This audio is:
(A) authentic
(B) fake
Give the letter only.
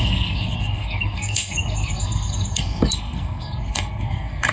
B